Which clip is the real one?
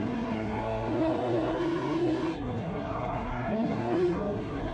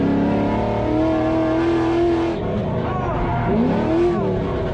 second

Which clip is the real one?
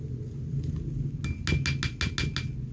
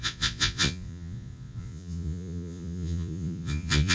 first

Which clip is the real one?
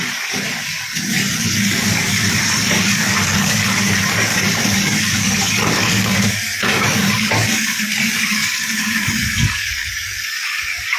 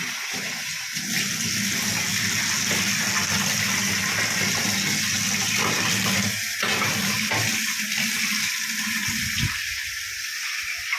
second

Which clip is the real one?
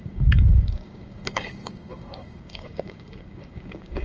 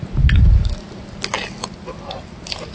second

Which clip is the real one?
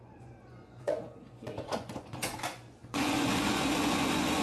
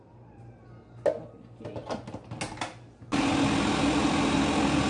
second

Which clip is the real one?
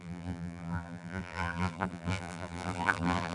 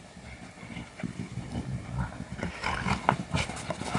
second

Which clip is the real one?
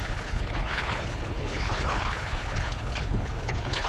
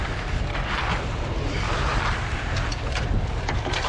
second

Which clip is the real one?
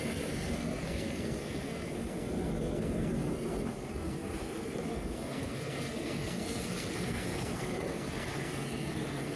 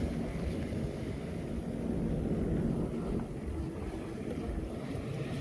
second